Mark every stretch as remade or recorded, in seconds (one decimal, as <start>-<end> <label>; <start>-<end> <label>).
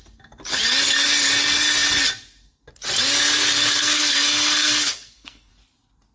0.0-3.8 recorded; 3.8-5.5 remade; 5.5-6.1 recorded